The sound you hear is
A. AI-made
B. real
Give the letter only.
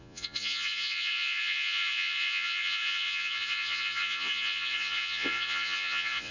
A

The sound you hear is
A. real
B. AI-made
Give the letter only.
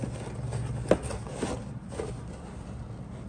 A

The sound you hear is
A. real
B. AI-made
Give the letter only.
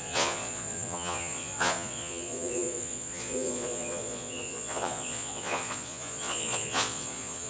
B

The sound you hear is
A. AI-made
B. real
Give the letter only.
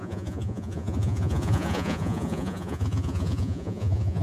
A